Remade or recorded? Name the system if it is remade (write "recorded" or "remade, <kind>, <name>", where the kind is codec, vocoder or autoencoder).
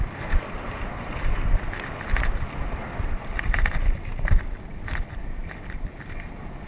recorded